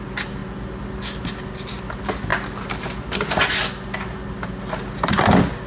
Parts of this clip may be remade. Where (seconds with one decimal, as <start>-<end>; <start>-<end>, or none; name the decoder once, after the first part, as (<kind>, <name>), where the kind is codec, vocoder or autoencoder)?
none